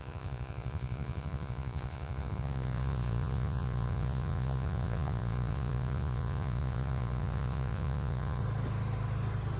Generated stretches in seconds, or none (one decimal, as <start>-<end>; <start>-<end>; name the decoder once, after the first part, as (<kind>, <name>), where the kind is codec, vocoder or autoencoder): 0.0-8.4 (vocoder, Vocos)